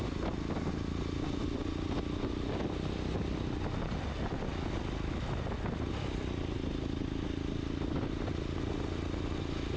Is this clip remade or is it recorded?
recorded